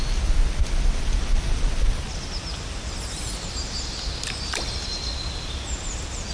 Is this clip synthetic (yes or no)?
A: no